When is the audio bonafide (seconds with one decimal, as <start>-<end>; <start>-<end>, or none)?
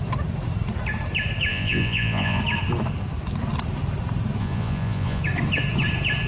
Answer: 0.0-1.5; 2.4-4.4; 5.2-6.3